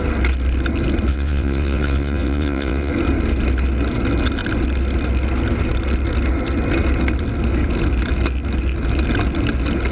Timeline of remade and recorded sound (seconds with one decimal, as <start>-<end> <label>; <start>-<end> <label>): 0.0-1.1 recorded; 1.1-2.9 remade; 2.9-9.9 recorded